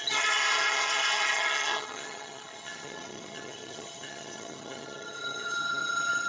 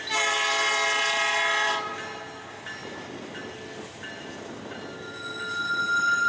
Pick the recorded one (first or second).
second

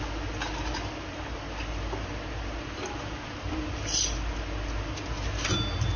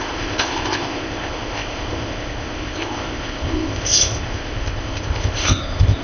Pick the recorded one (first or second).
first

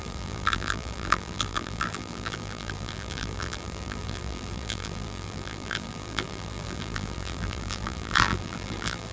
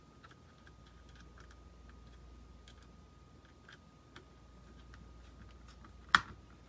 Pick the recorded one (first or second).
second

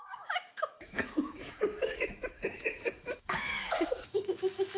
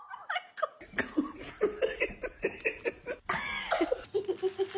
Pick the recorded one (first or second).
second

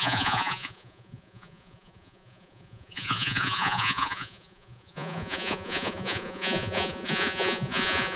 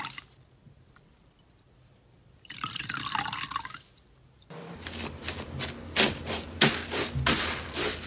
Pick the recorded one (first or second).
second